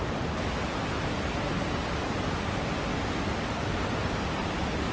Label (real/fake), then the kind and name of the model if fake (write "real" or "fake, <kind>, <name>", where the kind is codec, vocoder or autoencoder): real